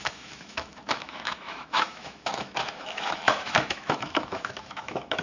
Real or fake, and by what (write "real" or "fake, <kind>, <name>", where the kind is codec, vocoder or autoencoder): fake, autoencoder, DAC-VAE